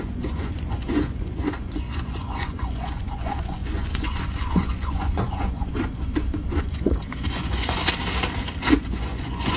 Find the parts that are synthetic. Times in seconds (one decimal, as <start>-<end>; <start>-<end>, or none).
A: 0.0-7.8; 8.7-9.6